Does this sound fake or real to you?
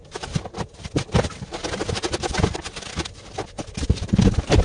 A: real